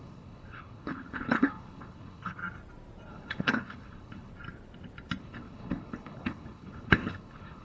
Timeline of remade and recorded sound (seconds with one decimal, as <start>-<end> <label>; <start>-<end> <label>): 0.0-2.4 remade; 2.4-3.1 recorded; 3.1-4.3 remade; 4.3-5.2 recorded; 5.2-7.6 remade